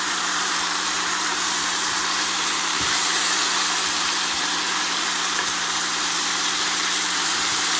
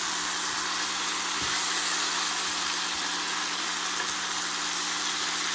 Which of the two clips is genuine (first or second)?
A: second